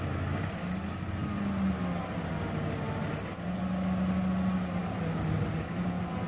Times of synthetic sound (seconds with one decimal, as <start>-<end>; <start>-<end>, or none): none